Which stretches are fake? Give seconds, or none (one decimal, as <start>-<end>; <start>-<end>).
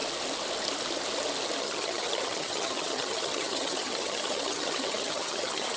1.6-5.8